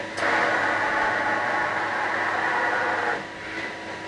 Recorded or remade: recorded